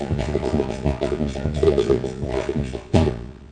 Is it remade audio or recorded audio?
remade